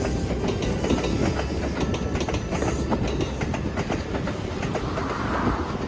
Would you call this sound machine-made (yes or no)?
no